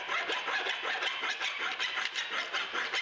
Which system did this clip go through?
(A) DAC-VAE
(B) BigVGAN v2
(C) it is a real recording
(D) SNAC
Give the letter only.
C